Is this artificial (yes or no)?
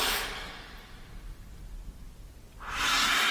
no